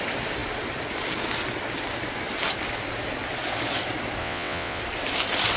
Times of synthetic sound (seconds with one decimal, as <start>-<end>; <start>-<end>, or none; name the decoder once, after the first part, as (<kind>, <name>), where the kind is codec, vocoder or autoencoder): 4.2-4.8 (vocoder, WaveNeXt)